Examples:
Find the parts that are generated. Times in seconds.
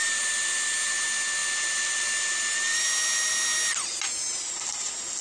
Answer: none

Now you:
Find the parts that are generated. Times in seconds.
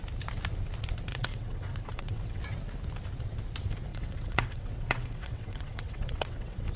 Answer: 1.1-2.4 (vocoder, WaveNeXt); 3.9-6.8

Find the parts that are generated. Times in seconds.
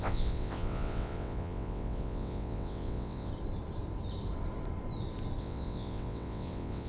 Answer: 0.0-3.3 (vocoder, WaveNeXt); 5.4-6.9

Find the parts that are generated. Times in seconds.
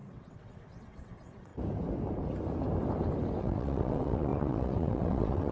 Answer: 0.0-1.5 (vocoder, WaveNeXt); 3.4-5.5